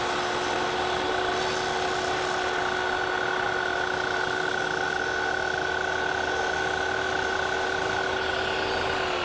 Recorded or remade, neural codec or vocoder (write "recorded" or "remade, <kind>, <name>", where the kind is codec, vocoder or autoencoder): recorded